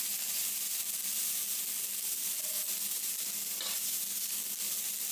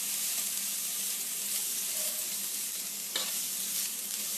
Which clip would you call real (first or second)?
first